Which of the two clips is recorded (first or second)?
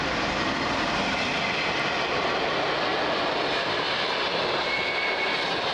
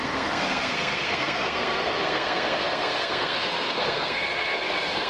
first